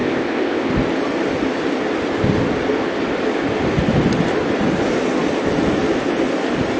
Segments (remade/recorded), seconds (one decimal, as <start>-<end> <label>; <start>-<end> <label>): 0.0-0.7 remade; 0.7-6.8 recorded